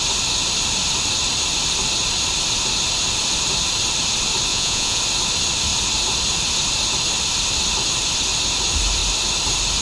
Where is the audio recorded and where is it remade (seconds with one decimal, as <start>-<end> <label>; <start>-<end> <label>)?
0.0-4.5 recorded; 4.5-5.0 remade; 5.0-9.8 recorded

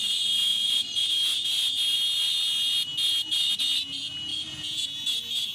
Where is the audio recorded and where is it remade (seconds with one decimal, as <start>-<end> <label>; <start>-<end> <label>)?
0.0-0.5 recorded; 0.5-1.1 remade; 1.1-4.3 recorded; 4.3-4.8 remade; 4.8-5.5 recorded

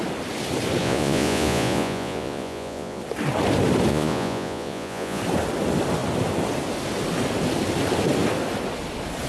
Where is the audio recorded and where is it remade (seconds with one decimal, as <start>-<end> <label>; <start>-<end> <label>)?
0.0-0.8 recorded; 0.8-3.0 remade; 3.0-3.9 recorded; 3.9-5.2 remade; 5.2-9.3 recorded